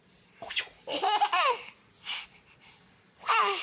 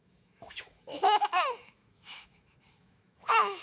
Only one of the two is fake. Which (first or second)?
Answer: second